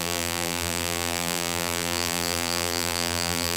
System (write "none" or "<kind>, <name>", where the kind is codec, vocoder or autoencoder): vocoder, BigVGAN v2